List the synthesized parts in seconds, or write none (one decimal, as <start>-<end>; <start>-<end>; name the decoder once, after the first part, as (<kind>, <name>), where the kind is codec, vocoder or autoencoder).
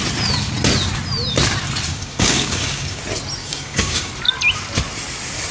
1.9-3.0 (codec, DAC); 3.4-4.1